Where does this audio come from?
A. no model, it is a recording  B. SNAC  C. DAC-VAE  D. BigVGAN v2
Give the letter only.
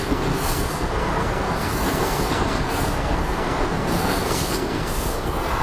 B